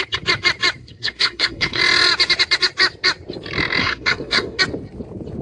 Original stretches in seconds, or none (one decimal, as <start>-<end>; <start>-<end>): 0.0-0.8; 1.8-3.8; 4.6-5.4